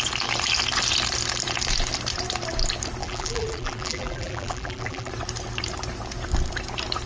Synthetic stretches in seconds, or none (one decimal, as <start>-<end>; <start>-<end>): 3.0-5.1